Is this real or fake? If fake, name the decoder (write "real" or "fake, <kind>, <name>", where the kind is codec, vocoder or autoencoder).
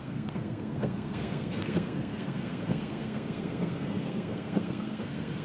fake, codec, SNAC